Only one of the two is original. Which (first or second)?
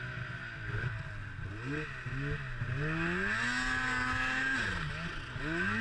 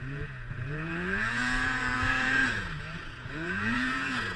first